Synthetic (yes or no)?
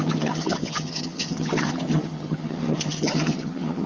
yes